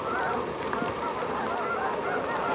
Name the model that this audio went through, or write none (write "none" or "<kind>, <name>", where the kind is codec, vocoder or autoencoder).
none